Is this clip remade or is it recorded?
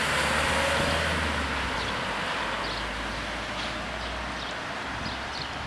recorded